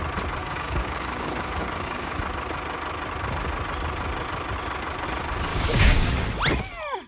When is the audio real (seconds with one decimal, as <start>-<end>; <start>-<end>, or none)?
0.0-0.4; 2.2-5.5; 6.1-7.1